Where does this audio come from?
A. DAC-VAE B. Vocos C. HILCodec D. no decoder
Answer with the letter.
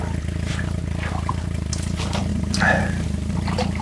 D